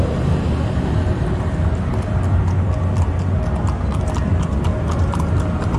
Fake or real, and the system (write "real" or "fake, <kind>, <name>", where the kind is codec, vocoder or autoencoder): real